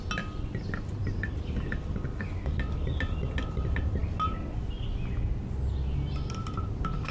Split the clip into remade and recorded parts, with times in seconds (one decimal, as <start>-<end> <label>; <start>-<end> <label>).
0.0-7.1 recorded